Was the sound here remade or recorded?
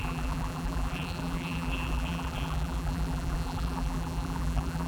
remade